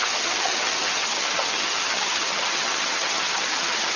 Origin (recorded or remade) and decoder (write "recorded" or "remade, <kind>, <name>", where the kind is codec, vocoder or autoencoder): remade, vocoder, HiFi-GAN